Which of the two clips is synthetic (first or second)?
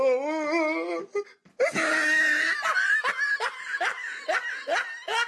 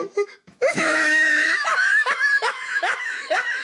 second